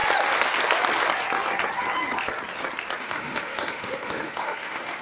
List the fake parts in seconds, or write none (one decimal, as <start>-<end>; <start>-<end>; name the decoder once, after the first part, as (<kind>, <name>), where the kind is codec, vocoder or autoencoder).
3.0-5.0 (autoencoder, DAC-VAE)